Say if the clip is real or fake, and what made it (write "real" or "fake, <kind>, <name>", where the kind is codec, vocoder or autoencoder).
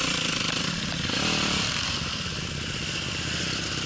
fake, vocoder, BigVGAN v2